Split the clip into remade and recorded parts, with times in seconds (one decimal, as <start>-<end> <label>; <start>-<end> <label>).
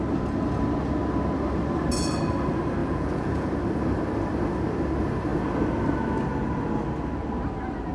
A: 0.0-2.8 recorded; 2.8-3.5 remade; 3.5-7.9 recorded